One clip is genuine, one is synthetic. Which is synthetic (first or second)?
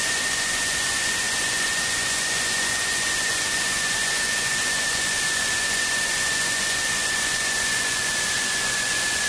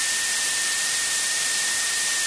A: first